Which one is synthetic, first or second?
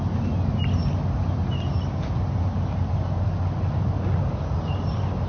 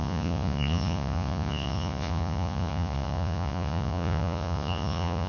second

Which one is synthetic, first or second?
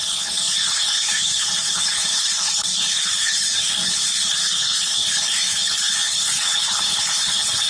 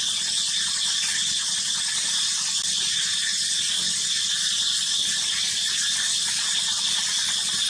first